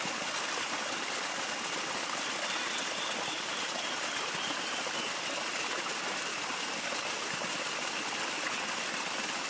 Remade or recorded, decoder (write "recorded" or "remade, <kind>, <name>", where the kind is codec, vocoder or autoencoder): recorded